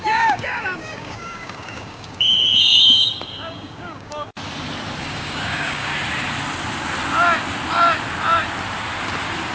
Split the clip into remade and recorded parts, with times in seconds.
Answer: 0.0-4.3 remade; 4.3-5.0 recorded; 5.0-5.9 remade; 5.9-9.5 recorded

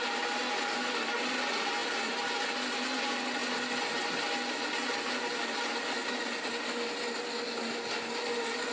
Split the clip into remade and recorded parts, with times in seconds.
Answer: 0.0-8.7 recorded

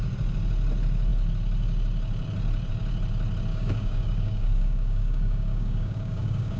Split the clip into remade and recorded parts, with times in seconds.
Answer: 0.0-3.5 recorded; 3.5-6.6 remade

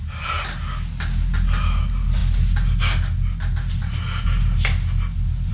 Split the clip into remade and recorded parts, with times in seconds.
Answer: 0.0-5.5 recorded

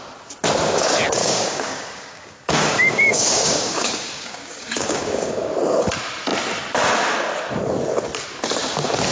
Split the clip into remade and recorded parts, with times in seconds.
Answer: 0.0-1.2 recorded; 1.2-5.5 remade; 5.5-9.1 recorded